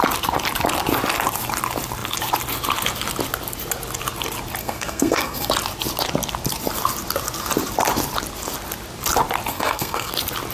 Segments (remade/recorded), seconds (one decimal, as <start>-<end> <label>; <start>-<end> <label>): 0.0-4.6 recorded; 4.6-5.5 remade; 5.5-9.5 recorded; 9.5-10.1 remade; 10.1-10.5 recorded